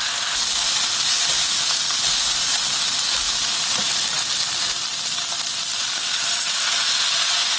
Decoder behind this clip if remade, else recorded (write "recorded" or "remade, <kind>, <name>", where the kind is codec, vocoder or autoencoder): recorded